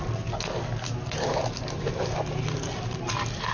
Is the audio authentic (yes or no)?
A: yes